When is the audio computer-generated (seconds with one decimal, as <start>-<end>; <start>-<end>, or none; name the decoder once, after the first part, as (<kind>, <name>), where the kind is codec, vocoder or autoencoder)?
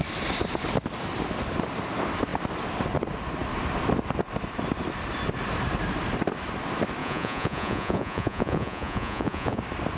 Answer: 7.0-9.6 (vocoder, Vocos)